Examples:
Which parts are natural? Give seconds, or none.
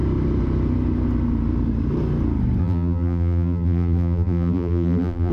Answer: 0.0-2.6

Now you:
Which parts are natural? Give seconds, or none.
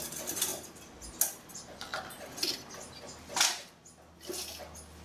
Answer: 0.0-5.0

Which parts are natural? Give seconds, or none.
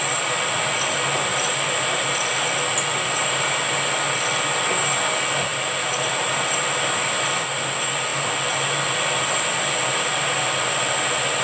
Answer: 0.0-1.3; 2.0-2.9; 3.6-5.5; 6.5-11.4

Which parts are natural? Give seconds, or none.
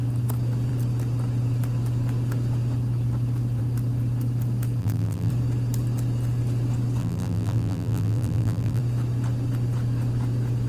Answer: 0.0-4.8; 5.3-7.0; 8.8-10.7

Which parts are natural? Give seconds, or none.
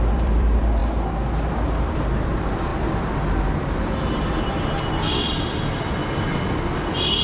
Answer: 0.8-1.6; 2.7-4.4; 6.0-6.7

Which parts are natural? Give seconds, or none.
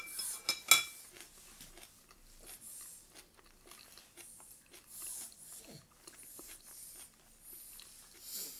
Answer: 0.0-8.6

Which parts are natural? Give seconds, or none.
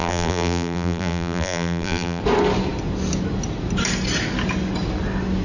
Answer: 2.2-5.4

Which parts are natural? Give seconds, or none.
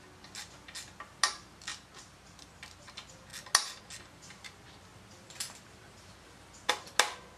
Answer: 0.0-1.7; 2.9-4.9; 6.7-7.4